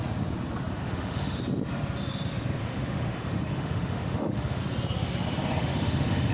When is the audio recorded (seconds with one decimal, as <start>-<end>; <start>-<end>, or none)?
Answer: 0.0-0.8; 1.4-2.6; 4.6-5.6